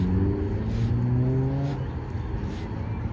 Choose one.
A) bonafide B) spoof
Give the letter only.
A